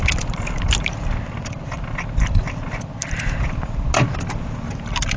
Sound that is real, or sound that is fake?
real